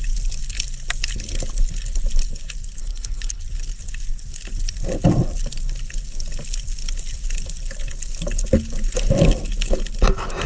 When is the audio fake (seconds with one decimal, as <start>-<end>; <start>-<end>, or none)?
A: 2.8-3.4